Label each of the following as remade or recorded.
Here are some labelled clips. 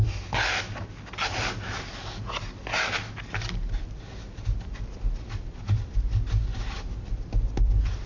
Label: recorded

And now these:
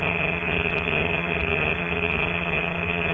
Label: remade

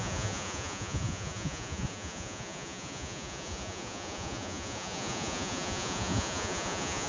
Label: remade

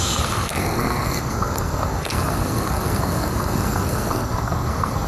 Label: remade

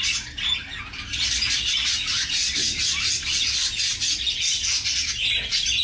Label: recorded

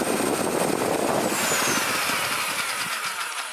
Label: remade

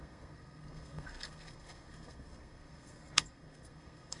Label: remade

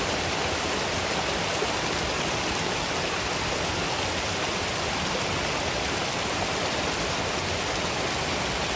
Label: recorded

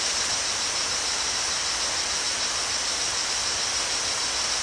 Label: recorded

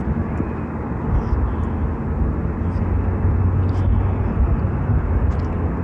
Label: recorded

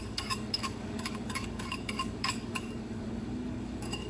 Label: remade